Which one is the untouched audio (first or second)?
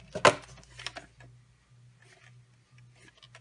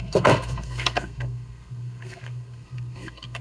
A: first